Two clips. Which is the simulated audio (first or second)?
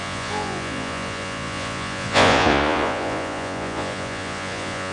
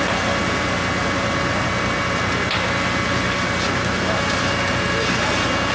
first